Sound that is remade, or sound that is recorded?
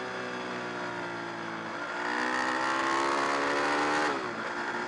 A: recorded